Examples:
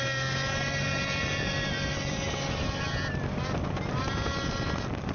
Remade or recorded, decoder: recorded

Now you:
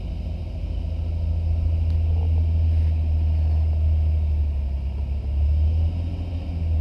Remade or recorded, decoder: recorded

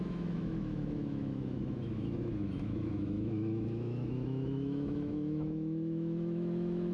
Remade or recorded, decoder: remade, autoencoder, DAC-VAE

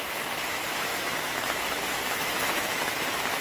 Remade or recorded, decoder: remade, autoencoder, DAC-VAE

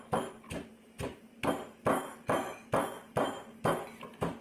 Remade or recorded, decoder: recorded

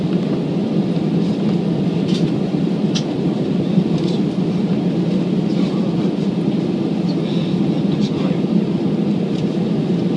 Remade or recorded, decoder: recorded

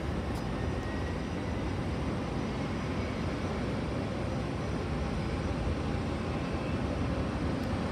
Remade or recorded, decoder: recorded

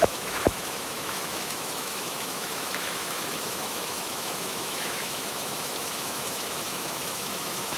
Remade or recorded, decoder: remade, autoencoder, DAC-VAE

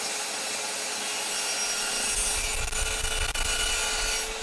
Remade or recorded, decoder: recorded